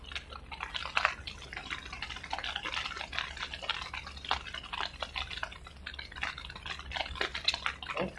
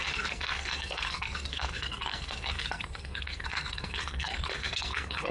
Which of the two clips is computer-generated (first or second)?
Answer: second